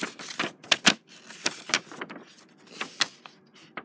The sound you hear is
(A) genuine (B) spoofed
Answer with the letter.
A